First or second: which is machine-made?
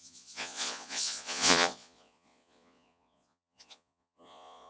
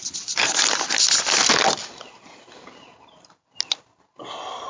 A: first